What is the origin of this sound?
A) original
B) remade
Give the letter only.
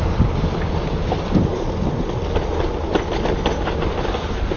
A